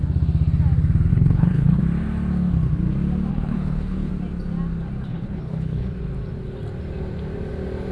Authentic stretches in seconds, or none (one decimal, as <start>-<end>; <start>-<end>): 0.0-1.1; 1.8-3.3; 4.1-5.1; 5.9-7.9